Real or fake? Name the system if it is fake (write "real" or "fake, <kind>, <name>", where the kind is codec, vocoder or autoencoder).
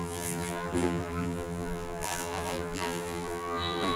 fake, vocoder, BigVGAN v2